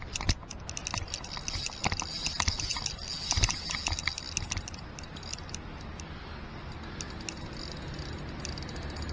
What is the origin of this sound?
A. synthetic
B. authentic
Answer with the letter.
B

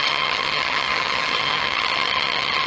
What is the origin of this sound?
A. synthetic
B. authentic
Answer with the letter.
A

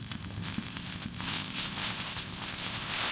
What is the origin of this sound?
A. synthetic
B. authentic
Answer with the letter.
A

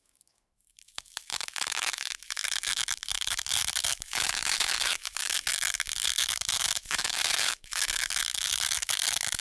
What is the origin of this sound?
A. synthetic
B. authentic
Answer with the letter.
A